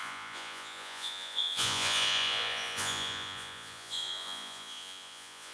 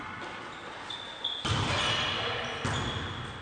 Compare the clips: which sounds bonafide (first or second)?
second